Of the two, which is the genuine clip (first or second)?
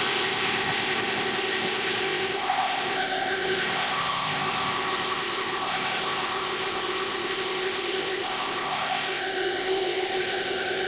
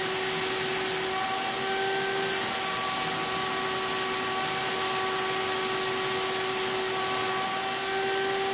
second